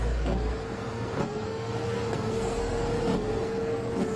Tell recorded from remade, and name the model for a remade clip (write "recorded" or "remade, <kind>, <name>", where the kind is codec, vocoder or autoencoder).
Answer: remade, codec, SNAC